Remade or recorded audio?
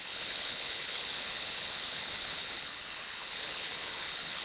remade